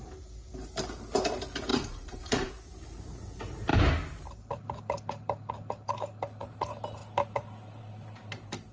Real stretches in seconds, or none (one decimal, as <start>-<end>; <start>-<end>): 0.0-1.7; 2.5-8.7